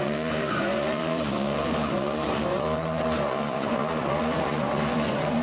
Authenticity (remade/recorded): remade